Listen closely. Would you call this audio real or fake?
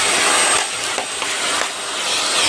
real